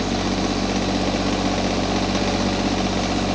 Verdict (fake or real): real